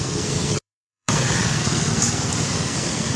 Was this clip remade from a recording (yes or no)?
yes